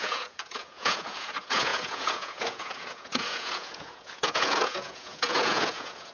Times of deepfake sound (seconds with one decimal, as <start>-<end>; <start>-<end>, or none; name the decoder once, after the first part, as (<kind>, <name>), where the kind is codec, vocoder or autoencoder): 0.0-6.1 (vocoder, Vocos)